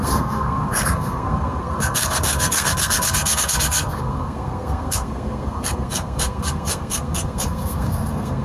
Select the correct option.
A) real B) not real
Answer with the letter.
B